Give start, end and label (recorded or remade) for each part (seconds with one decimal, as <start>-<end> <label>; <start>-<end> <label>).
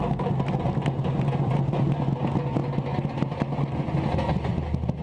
0.0-5.0 recorded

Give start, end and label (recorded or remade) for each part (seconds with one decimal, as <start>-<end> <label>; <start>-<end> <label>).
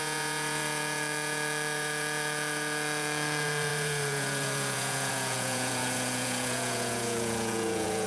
0.0-8.1 remade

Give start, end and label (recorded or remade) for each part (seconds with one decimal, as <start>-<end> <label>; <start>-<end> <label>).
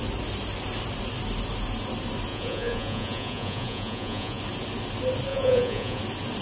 0.0-2.3 recorded; 2.3-4.4 remade; 4.4-5.3 recorded; 5.3-6.0 remade; 6.0-6.4 recorded